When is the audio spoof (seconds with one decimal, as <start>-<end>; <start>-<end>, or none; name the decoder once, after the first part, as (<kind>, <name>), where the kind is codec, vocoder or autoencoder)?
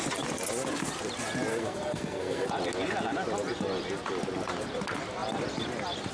1.5-2.5 (codec, SNAC)